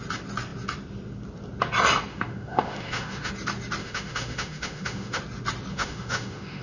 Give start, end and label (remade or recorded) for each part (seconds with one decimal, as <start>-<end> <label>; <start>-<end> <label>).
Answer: 0.0-2.1 recorded; 2.1-3.3 remade; 3.3-3.8 recorded; 3.8-5.2 remade; 5.2-5.7 recorded; 5.7-6.6 remade